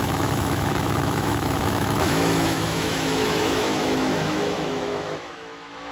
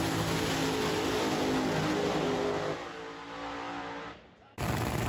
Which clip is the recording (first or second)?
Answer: second